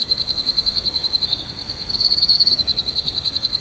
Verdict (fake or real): fake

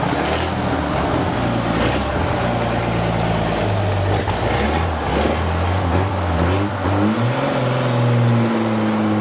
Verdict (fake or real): real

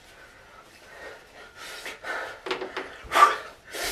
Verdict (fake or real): real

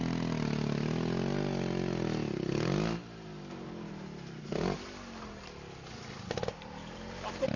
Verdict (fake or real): real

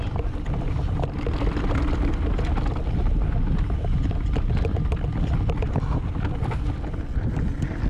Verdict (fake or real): real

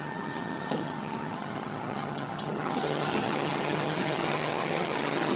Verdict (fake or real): fake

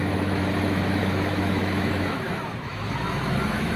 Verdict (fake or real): fake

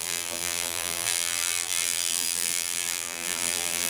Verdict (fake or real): fake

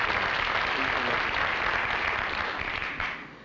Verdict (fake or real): real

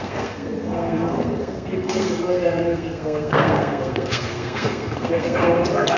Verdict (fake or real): fake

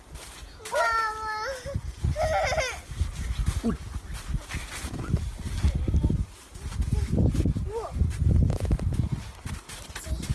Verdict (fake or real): real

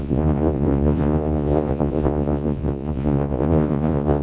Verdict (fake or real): fake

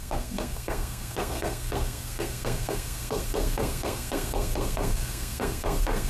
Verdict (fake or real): fake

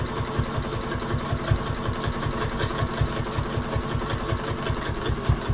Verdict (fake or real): real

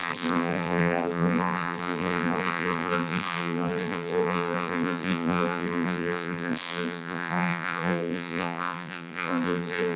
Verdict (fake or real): fake